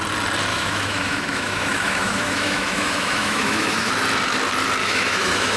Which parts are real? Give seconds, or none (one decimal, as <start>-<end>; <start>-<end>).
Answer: 0.0-0.5; 3.9-4.8